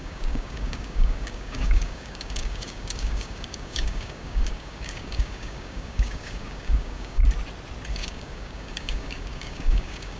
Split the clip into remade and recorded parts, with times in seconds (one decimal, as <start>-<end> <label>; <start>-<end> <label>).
0.0-7.2 remade; 7.2-7.9 recorded; 7.9-10.2 remade